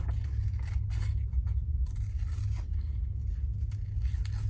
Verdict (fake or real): real